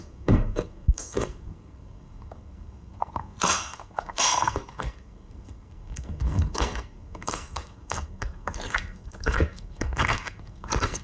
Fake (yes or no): yes